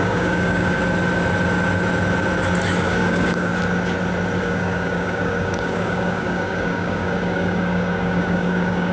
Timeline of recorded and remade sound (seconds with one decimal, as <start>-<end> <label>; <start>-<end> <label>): 0.0-0.8 remade; 0.8-2.8 recorded; 2.8-3.5 remade; 3.5-4.4 recorded; 4.4-8.9 remade